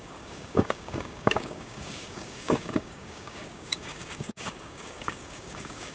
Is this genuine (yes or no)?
no